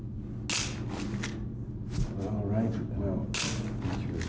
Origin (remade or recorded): recorded